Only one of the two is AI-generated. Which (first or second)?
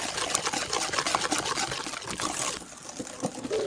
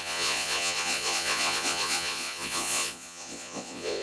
second